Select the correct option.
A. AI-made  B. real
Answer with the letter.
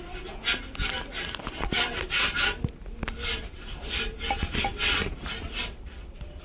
B